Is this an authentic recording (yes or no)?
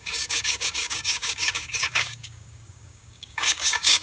no